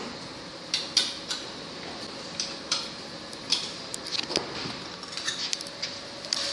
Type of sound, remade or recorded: recorded